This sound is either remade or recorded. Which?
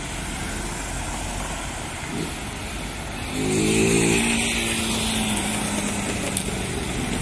recorded